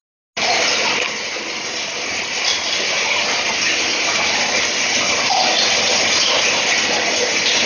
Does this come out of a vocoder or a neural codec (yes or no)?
no